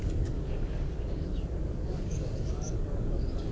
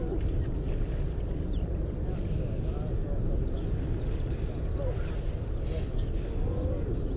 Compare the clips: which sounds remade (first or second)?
first